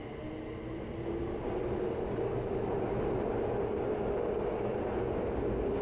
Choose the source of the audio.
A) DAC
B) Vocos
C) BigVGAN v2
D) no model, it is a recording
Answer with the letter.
D